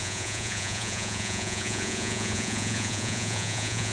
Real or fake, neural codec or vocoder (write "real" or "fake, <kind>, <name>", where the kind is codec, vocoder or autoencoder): fake, vocoder, Vocos